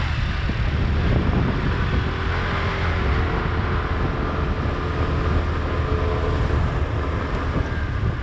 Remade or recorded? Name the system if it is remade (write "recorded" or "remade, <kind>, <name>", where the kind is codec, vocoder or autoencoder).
recorded